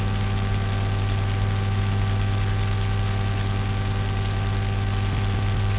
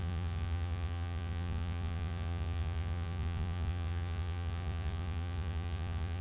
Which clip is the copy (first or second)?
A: second